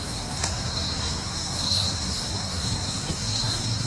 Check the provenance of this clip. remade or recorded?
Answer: remade